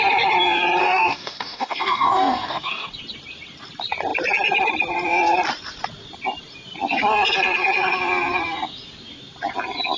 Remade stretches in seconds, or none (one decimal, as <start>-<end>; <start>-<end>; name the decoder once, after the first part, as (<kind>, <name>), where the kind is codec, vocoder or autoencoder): 0.8-2.9 (codec, DAC)